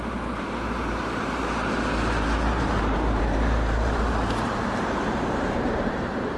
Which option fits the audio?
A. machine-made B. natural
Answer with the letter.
A